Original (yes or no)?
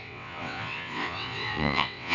no